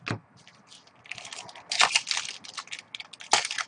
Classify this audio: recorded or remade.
recorded